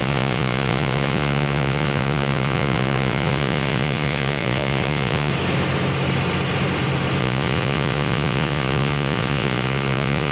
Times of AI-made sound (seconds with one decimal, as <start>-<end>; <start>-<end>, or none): 0.0-5.3; 7.2-10.3